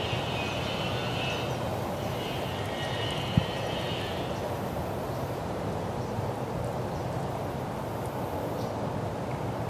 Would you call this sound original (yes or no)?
yes